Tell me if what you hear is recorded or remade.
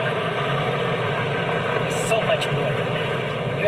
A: recorded